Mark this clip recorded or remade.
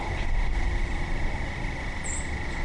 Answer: recorded